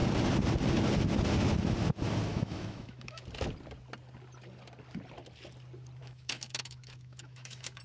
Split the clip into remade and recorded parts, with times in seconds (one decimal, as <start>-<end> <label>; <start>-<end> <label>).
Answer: 0.0-2.3 recorded; 2.3-3.2 remade; 3.2-6.0 recorded; 6.0-7.8 remade